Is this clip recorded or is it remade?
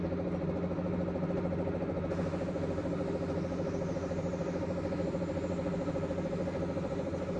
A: recorded